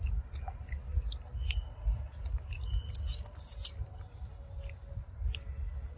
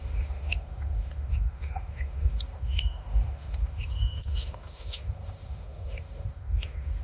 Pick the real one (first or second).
first